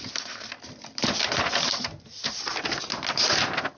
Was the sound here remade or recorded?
recorded